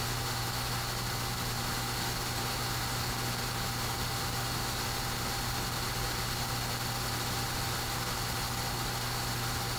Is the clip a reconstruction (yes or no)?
no